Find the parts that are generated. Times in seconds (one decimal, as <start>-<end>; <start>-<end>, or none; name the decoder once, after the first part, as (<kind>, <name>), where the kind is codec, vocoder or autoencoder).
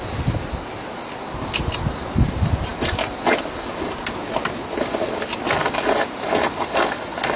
none